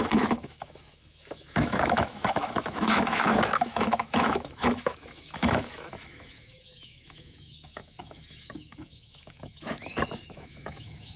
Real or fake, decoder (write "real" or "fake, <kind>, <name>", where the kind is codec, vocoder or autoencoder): fake, autoencoder, DAC-VAE